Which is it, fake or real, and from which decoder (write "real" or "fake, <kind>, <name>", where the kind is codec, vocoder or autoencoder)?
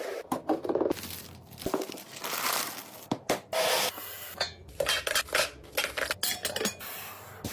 real